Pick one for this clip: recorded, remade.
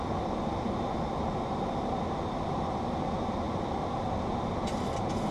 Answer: recorded